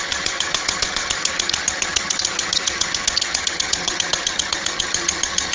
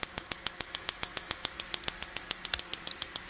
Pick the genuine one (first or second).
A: second